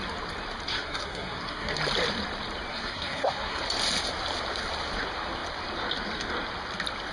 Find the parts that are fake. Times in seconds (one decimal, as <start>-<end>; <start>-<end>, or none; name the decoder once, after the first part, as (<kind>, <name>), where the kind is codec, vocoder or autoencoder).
0.7-1.7 (codec, SNAC); 2.7-3.6